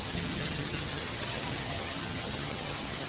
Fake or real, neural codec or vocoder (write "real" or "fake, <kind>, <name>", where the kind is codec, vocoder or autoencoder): fake, vocoder, HiFi-GAN